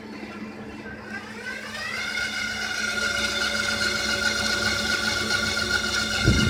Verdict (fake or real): real